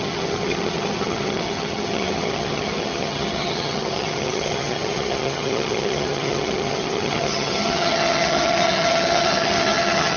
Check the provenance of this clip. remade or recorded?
remade